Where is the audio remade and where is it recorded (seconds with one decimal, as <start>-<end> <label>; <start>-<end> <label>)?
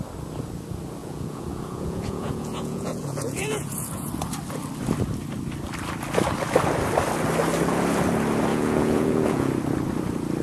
0.0-1.0 recorded; 1.0-4.1 remade; 4.1-8.5 recorded; 8.5-9.5 remade; 9.5-10.4 recorded